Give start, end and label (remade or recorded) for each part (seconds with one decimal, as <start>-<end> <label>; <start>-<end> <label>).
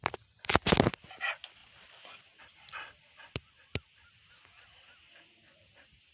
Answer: 0.0-6.1 recorded